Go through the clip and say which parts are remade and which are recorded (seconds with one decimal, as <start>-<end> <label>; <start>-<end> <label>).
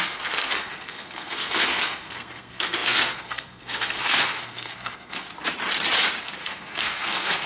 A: 0.0-5.3 remade; 5.3-6.2 recorded; 6.2-7.5 remade